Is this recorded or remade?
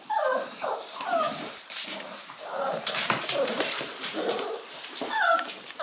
remade